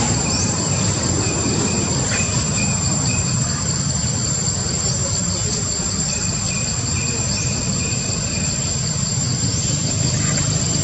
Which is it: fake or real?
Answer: fake